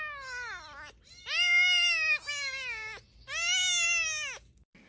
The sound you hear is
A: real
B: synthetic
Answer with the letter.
A